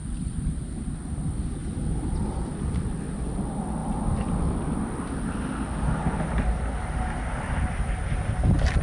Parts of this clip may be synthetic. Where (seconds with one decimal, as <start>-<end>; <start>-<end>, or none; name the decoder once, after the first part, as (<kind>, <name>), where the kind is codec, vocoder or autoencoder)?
none